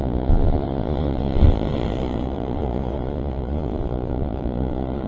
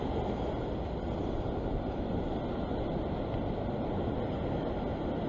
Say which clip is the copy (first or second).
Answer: first